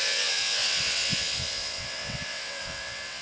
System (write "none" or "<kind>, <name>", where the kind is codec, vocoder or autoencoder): vocoder, WaveNeXt